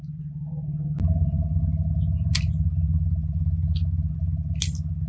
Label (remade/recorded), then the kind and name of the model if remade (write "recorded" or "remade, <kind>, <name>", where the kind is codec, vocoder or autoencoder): recorded